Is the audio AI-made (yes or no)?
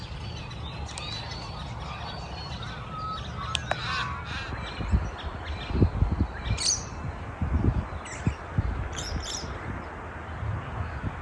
no